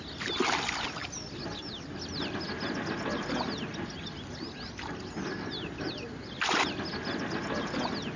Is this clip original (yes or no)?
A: yes